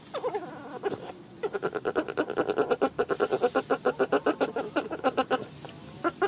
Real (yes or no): yes